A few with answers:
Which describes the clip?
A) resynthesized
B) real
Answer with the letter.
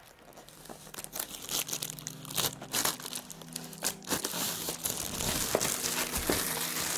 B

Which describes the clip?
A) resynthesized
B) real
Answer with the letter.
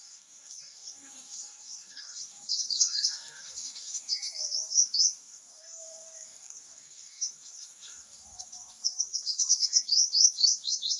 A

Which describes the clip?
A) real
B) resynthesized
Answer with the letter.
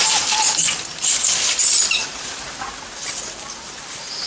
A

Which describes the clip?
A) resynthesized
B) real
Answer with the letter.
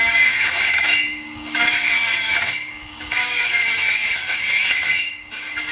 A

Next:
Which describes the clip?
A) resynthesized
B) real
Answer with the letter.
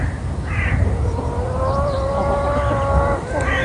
B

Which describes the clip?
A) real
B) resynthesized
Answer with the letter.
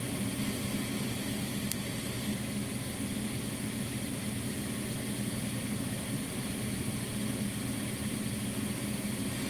A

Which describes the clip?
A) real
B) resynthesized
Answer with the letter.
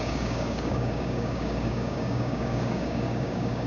B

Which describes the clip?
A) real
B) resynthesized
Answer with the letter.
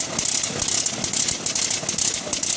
A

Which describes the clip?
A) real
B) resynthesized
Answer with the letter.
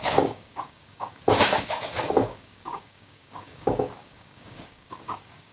B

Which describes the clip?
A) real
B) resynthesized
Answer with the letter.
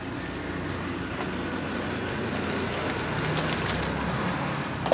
A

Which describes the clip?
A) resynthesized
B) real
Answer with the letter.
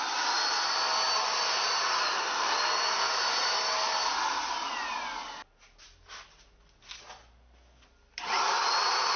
B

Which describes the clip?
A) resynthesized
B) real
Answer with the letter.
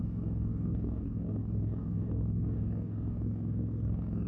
A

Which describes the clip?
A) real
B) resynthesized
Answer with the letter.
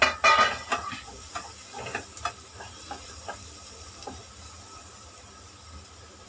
A